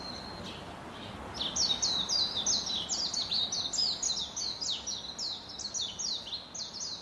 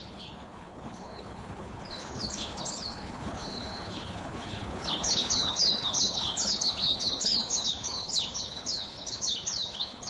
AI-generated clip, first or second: second